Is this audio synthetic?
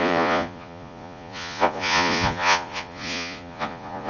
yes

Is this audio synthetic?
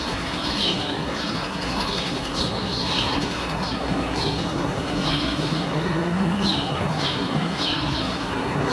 yes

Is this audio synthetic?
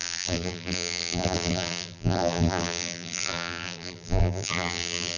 yes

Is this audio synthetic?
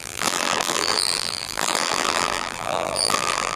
yes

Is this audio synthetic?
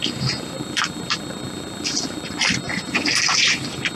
yes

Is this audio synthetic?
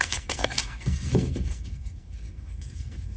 yes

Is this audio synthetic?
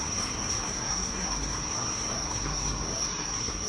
yes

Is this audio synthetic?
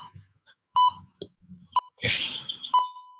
yes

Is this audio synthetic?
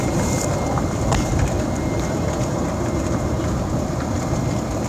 yes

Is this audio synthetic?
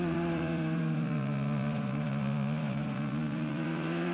yes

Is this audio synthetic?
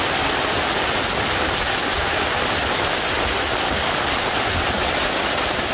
no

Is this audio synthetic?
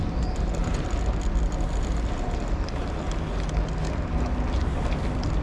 no